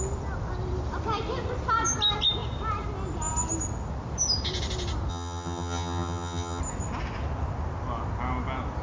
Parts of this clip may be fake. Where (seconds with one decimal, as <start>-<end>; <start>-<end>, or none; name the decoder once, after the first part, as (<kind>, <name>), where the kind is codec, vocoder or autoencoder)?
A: 5.1-6.6 (vocoder, HiFi-GAN)

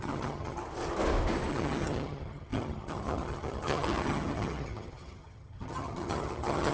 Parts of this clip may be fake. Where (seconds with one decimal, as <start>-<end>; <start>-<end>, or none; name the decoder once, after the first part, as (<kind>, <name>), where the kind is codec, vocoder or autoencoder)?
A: 0.0-0.6 (vocoder, HiFi-GAN); 1.5-6.7

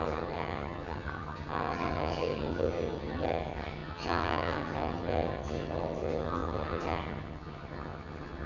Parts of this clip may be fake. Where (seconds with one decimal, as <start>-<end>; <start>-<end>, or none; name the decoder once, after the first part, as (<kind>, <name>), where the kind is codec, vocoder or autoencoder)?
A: 0.0-8.5 (vocoder, HiFi-GAN)

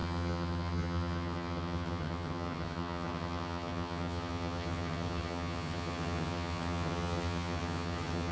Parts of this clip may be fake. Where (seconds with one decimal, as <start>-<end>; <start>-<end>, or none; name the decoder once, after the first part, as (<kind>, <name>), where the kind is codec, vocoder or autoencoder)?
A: 0.0-8.3 (vocoder, HiFi-GAN)